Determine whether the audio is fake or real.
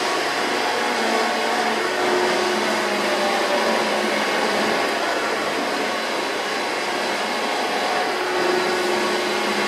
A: real